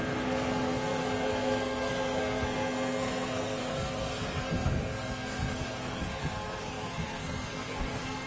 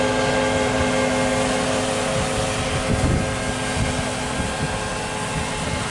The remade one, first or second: first